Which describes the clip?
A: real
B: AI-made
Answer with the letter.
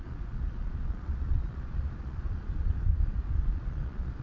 B